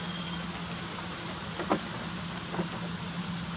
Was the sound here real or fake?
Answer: real